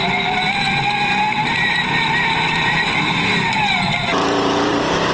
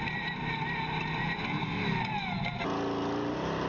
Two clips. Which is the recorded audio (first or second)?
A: second